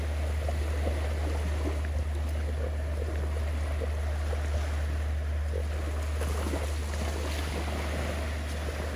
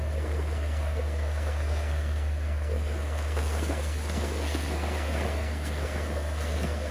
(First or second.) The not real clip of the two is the second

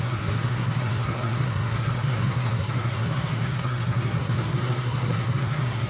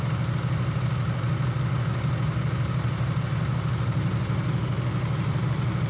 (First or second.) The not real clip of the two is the first